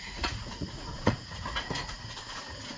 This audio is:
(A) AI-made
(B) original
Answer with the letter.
A